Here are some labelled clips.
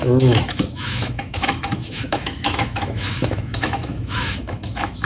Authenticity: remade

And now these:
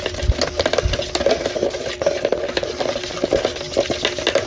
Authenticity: recorded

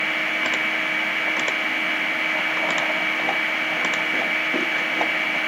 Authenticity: recorded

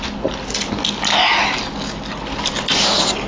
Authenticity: recorded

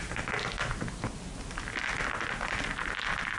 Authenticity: recorded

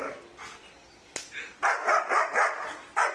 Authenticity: recorded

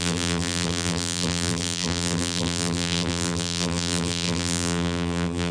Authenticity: remade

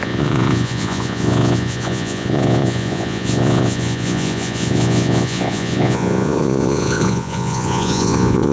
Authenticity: remade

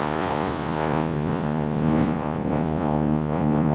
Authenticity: remade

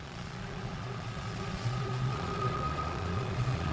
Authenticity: remade